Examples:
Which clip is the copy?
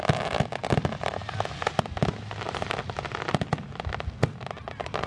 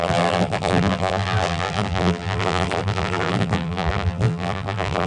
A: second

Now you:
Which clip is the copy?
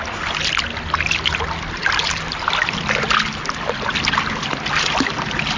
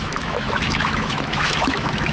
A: second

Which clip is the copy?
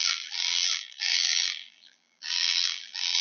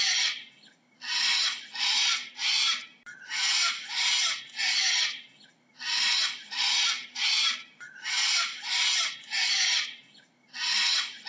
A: first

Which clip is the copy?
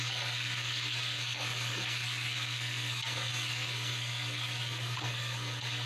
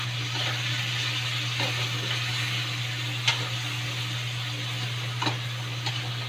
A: first